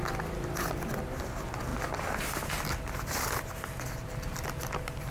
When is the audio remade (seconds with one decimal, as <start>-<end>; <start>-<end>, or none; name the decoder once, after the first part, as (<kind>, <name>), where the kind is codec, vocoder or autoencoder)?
none